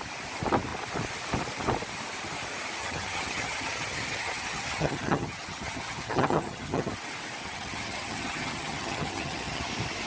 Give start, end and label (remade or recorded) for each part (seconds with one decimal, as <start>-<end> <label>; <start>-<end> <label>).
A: 0.0-2.8 recorded; 2.8-6.9 remade; 6.9-7.4 recorded; 7.4-9.7 remade; 9.7-10.1 recorded